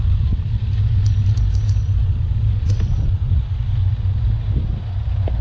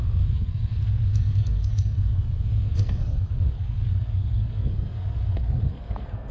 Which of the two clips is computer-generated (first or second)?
second